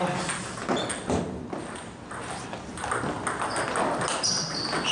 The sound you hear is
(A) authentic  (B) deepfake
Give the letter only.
A